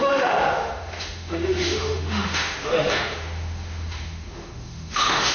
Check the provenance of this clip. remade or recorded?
remade